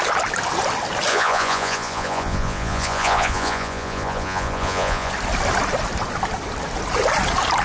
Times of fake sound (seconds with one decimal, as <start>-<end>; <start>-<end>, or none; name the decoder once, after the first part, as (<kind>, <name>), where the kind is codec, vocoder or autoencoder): 1.1-5.1 (vocoder, Vocos)

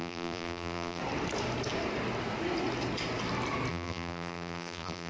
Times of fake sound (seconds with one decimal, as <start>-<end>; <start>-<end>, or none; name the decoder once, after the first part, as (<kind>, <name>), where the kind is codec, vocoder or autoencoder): 0.0-1.0 (vocoder, BigVGAN v2); 3.7-5.1

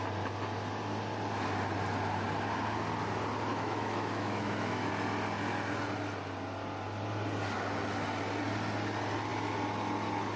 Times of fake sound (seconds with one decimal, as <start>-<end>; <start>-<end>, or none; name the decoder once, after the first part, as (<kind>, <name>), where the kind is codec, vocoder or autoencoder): 3.5-4.9 (autoencoder, DAC-VAE)